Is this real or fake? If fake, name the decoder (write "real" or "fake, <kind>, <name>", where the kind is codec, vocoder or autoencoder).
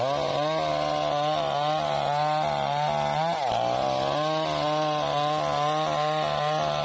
real